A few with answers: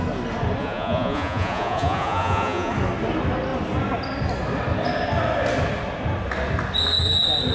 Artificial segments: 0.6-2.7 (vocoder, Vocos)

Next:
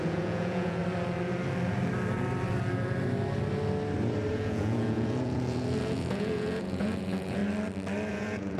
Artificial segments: 0.0-0.8 (vocoder, Vocos); 4.3-7.4; 8.1-8.6

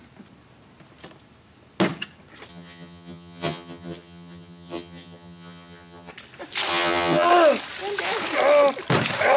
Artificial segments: 2.5-6.1 (vocoder, HiFi-GAN); 6.7-7.3

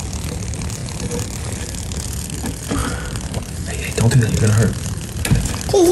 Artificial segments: none

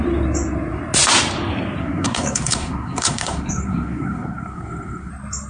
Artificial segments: 1.8-5.1 (codec, SNAC)

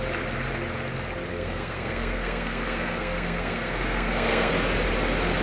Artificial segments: 1.3-4.5 (codec, SNAC)